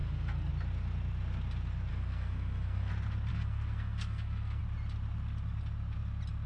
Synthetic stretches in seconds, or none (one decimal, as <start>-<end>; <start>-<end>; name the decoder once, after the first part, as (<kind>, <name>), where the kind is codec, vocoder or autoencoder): 0.0-0.5 (codec, SNAC); 1.9-2.9; 3.3-4.6